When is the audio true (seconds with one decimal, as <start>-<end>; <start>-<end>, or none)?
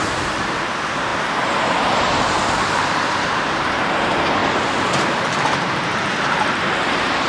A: 4.4-5.3